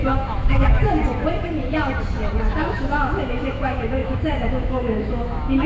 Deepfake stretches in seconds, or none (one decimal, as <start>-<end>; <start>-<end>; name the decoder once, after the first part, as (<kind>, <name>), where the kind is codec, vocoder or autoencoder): 0.0-1.0 (autoencoder, DAC-VAE); 2.4-5.7